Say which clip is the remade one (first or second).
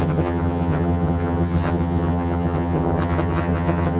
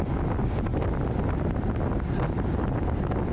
first